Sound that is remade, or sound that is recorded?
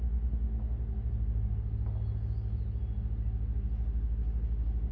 recorded